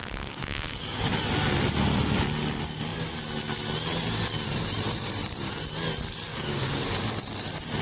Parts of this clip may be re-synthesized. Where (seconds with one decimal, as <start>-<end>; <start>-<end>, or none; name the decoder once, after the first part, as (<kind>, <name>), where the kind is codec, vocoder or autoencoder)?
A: 0.0-1.1 (codec, DAC); 6.3-6.9